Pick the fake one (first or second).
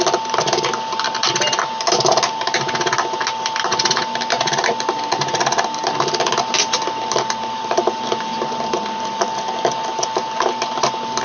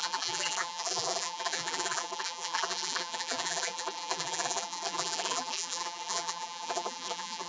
second